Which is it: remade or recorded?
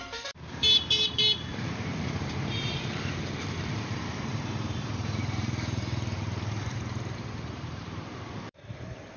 remade